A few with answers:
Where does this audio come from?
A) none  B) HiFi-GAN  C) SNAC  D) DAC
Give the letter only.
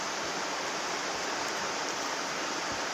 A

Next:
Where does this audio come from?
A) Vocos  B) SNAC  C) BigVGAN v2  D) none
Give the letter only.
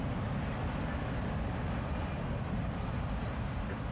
D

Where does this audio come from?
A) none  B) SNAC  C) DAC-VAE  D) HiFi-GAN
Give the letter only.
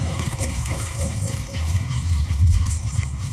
B